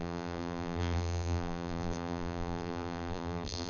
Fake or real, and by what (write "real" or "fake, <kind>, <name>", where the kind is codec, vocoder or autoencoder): fake, vocoder, BigVGAN v2